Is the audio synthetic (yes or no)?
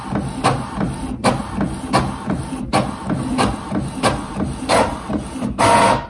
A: no